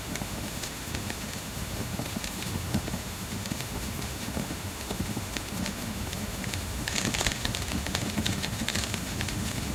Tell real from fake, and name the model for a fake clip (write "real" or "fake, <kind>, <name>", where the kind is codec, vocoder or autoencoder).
fake, autoencoder, DAC-VAE